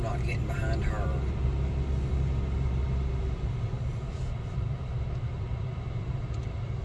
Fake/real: real